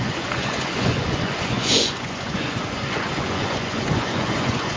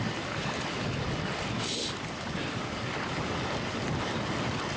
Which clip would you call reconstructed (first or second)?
first